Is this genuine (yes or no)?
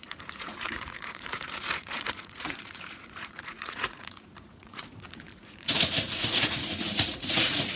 no